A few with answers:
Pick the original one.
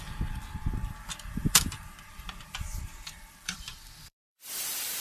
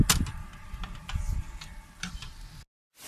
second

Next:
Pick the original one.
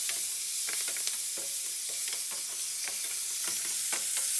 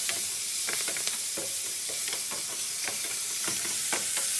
first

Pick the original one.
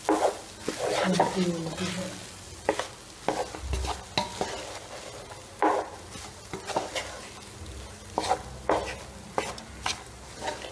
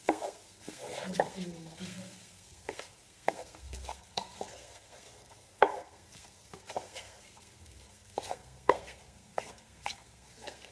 first